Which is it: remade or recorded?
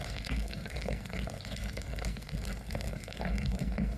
remade